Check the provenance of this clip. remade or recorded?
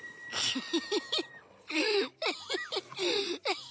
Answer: recorded